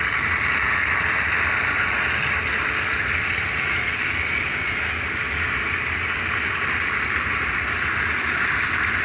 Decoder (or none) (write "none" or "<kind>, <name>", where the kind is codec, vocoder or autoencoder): none